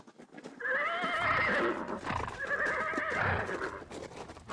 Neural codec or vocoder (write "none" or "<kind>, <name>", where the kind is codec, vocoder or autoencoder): none